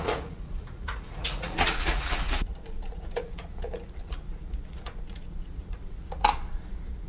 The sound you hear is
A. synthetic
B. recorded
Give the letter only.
A